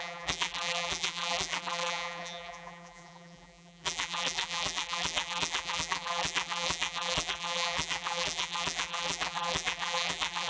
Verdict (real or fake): fake